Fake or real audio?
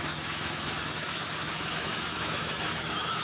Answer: fake